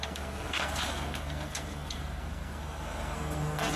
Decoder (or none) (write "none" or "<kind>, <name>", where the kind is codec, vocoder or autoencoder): codec, SNAC